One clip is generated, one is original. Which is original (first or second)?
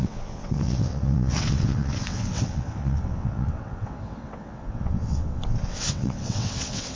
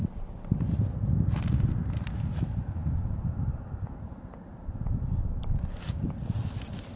second